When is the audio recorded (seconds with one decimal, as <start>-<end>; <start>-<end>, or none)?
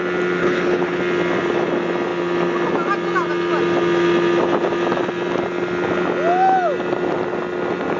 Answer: 0.0-0.4; 1.0-8.0